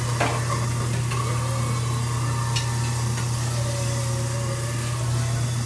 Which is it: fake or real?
real